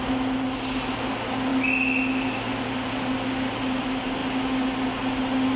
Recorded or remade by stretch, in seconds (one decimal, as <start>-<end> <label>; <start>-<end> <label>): 0.0-5.6 recorded